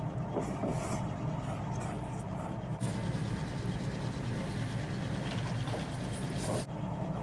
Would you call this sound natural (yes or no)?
yes